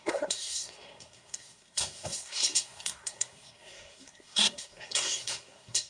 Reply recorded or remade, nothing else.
remade